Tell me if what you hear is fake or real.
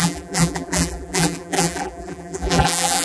fake